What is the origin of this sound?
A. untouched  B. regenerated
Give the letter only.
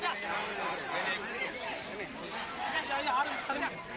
A